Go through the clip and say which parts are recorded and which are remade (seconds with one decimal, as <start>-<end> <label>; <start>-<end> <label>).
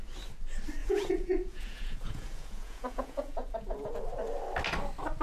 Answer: 0.0-0.8 recorded; 0.8-3.9 remade; 3.9-5.2 recorded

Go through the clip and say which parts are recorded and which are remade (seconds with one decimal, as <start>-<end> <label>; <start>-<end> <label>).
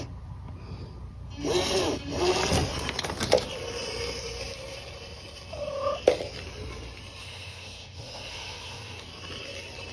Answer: 0.0-7.2 recorded; 7.2-9.0 remade; 9.0-9.9 recorded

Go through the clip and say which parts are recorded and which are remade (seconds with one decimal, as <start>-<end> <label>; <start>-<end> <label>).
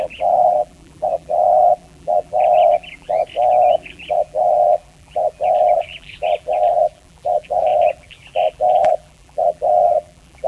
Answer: 0.0-3.2 remade; 3.2-3.7 recorded; 3.7-10.5 remade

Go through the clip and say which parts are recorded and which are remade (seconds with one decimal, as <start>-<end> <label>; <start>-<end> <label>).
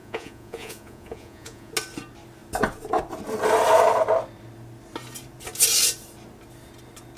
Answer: 0.0-1.7 remade; 1.7-7.2 recorded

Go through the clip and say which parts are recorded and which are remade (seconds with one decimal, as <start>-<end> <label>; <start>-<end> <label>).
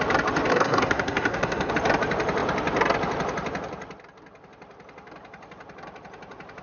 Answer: 0.0-0.5 recorded; 0.5-1.7 remade; 1.7-6.6 recorded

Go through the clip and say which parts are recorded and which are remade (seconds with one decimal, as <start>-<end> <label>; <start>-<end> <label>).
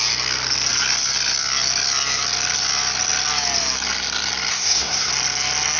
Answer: 0.0-4.5 recorded; 4.5-5.1 remade; 5.1-5.8 recorded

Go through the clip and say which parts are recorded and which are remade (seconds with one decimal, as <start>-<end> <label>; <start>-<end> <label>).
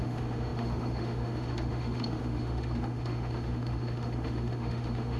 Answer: 0.0-5.2 remade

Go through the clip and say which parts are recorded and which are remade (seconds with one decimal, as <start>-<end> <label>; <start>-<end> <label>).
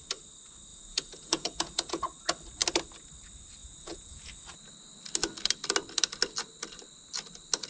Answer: 0.0-0.7 recorded; 0.7-2.0 remade; 2.0-3.6 recorded; 3.6-4.3 remade; 4.3-7.7 recorded